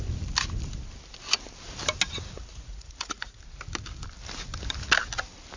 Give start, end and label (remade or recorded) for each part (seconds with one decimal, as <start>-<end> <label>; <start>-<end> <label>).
0.0-2.5 recorded; 2.5-3.4 remade; 3.4-5.6 recorded